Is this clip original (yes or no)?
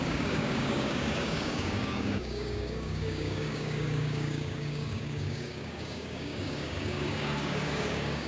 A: no